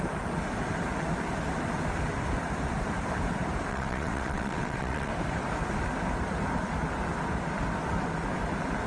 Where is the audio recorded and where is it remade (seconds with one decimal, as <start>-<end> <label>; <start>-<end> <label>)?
0.0-3.7 recorded; 3.7-5.1 remade; 5.1-8.9 recorded